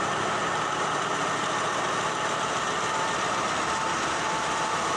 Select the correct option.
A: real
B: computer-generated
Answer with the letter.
B